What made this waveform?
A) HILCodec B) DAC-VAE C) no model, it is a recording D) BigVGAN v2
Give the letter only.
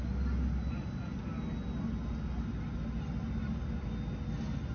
C